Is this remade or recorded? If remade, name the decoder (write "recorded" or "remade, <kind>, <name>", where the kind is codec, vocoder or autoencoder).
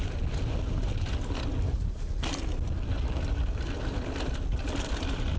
recorded